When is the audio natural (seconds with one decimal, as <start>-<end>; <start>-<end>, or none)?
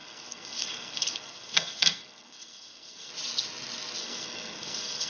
3.1-4.0